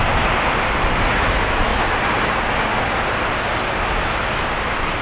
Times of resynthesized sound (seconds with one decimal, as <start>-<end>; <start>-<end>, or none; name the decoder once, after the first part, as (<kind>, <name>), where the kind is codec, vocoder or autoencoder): none